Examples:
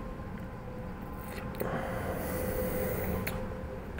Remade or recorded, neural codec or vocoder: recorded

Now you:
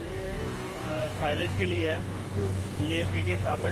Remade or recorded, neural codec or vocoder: remade, codec, DAC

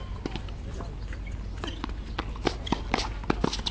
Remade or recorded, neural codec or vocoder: recorded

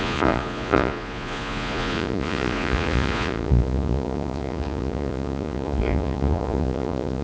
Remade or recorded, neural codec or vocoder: remade, vocoder, Vocos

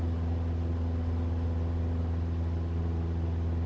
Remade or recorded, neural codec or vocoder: recorded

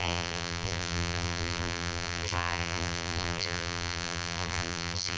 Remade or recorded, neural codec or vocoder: remade, vocoder, BigVGAN v2